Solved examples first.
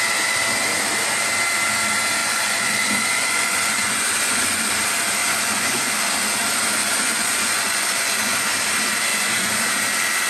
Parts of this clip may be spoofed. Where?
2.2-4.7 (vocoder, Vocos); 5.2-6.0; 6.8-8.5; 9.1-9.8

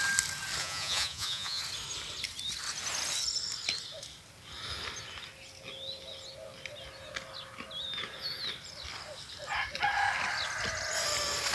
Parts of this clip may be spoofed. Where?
0.6-1.6 (vocoder, Vocos)

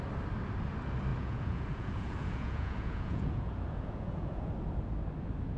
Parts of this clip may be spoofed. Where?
1.1-4.5 (vocoder, Vocos)

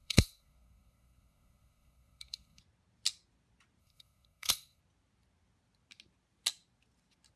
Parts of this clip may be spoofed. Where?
0.0-2.6 (codec, SNAC); 3.8-4.8

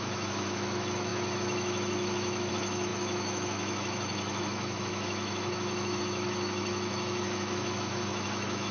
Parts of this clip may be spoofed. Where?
0.0-8.7 (autoencoder, DAC-VAE)